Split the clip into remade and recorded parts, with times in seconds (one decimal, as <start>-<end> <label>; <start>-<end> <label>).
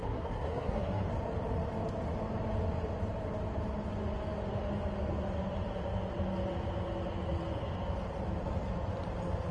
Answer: 0.0-1.1 remade; 1.1-9.5 recorded